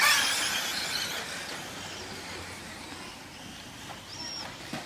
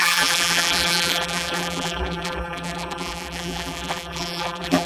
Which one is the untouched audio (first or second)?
first